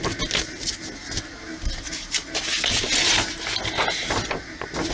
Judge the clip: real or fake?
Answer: real